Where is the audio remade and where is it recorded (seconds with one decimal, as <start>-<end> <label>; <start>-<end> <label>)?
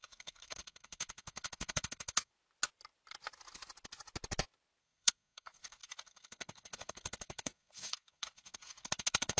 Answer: 0.0-2.3 remade; 2.3-4.8 recorded; 4.8-9.4 remade